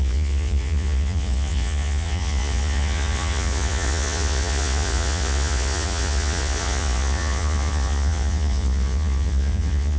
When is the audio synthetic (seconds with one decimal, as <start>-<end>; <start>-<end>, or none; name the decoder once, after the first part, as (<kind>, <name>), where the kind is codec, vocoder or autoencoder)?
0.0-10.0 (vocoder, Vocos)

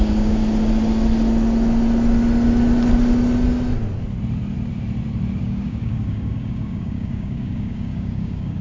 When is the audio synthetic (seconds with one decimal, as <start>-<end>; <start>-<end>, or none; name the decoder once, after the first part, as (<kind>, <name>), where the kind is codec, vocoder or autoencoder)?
0.0-0.4 (codec, DAC); 5.4-8.6

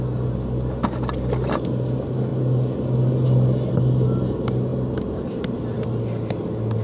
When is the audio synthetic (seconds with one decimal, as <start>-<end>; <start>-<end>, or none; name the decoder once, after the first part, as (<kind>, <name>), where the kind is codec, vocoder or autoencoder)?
4.7-6.0 (vocoder, BigVGAN v2)

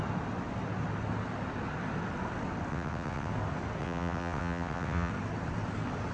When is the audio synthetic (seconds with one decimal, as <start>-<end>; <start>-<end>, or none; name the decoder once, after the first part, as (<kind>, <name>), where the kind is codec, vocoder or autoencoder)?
2.7-3.3 (vocoder, WaveNeXt); 3.8-5.1

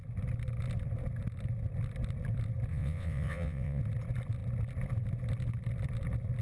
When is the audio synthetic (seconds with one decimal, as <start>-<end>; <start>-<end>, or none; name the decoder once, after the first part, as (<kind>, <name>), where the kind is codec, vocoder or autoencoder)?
2.7-3.8 (vocoder, WaveNeXt)